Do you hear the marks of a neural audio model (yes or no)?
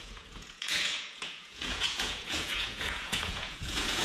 yes